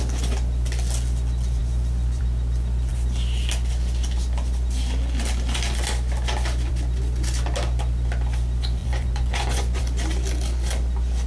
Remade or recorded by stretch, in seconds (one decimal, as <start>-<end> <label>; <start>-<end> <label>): 0.0-8.8 recorded; 8.8-9.8 remade; 9.8-11.3 recorded